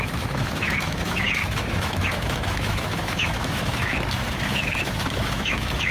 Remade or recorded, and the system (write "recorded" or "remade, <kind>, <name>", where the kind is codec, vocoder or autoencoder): remade, autoencoder, DAC-VAE